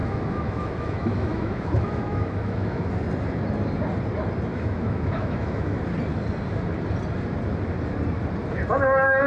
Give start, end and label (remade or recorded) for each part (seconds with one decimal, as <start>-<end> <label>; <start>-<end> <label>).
0.0-2.9 remade; 2.9-4.5 recorded; 4.5-5.8 remade; 5.8-9.3 recorded